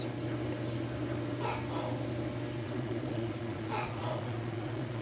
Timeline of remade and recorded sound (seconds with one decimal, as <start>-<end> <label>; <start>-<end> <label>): 0.0-2.6 recorded; 2.6-5.0 remade